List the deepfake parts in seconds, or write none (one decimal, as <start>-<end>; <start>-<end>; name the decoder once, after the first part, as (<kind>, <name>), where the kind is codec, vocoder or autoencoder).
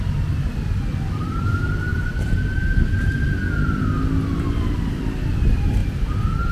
none